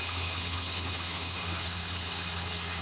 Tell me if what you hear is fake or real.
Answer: fake